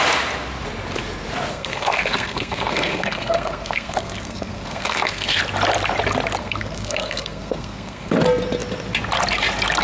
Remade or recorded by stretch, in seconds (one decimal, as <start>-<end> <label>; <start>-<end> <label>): 0.0-1.5 recorded; 1.5-5.4 remade; 5.4-6.4 recorded; 6.4-8.1 remade; 8.1-9.8 recorded